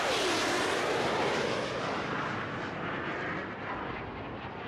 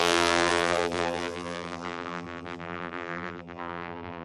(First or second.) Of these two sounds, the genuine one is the first